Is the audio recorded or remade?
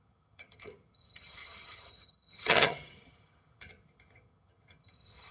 remade